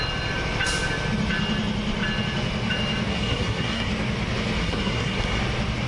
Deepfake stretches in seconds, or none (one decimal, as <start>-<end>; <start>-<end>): 3.1-3.9; 4.6-5.4